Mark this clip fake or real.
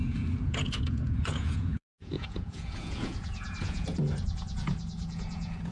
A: fake